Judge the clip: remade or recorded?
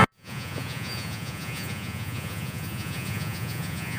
remade